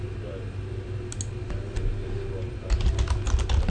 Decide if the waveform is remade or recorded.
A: recorded